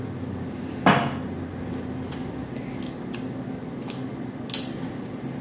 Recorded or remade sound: recorded